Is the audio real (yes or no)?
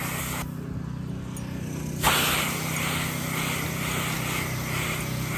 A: yes